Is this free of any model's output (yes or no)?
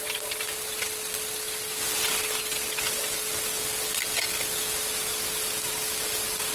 yes